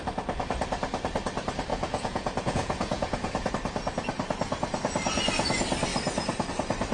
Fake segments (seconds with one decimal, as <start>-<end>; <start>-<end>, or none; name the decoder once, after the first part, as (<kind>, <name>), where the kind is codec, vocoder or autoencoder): 1.7-3.5 (vocoder, Vocos)